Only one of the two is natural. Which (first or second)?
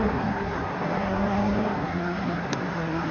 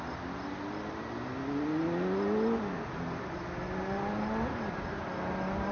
second